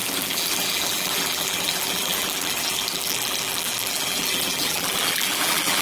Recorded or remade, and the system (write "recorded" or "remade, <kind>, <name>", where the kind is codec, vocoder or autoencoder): remade, vocoder, BigVGAN v2